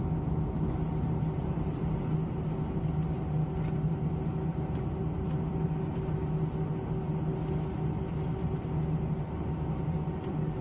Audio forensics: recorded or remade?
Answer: recorded